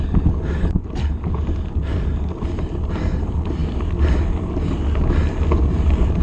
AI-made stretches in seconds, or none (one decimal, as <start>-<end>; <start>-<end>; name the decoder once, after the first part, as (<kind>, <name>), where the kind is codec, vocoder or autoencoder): none